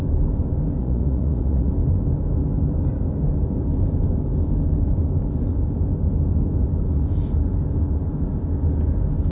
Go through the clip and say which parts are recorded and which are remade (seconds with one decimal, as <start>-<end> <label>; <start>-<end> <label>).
0.0-0.8 recorded; 0.8-1.7 remade; 1.7-9.3 recorded